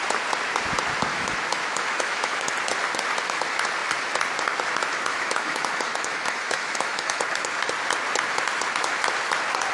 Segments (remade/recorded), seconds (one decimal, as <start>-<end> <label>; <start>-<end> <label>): 0.0-1.1 recorded; 1.1-2.5 remade; 2.5-5.1 recorded; 5.1-7.2 remade; 7.2-9.7 recorded